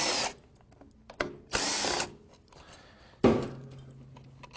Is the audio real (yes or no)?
yes